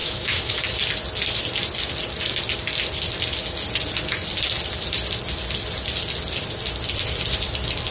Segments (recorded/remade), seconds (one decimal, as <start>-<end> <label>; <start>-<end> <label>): 0.0-0.6 remade; 0.6-7.9 recorded